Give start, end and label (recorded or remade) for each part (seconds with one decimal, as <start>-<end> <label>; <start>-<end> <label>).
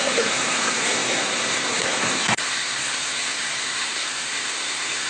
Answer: 0.0-5.1 remade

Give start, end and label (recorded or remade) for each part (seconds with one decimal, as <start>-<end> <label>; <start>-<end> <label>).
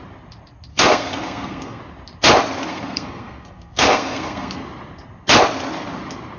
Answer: 0.0-0.7 recorded; 0.7-1.8 remade; 1.8-2.7 recorded; 2.7-4.6 remade; 4.6-6.4 recorded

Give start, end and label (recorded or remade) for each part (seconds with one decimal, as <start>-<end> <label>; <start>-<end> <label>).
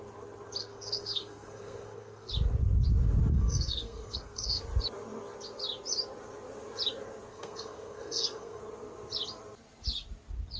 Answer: 0.0-0.6 recorded; 0.6-2.3 remade; 2.3-3.3 recorded; 3.3-4.6 remade; 4.6-7.3 recorded; 7.3-8.6 remade; 8.6-10.6 recorded